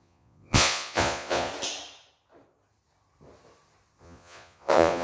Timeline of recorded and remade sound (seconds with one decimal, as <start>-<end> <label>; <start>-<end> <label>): 0.0-1.5 remade; 1.5-4.0 recorded; 4.0-5.0 remade